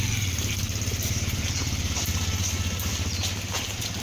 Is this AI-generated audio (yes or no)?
yes